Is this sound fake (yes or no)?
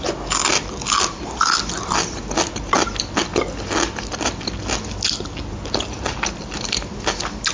no